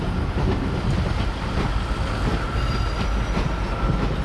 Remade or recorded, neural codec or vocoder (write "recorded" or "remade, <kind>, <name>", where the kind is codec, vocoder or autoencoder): recorded